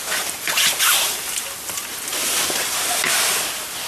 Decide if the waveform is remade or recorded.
recorded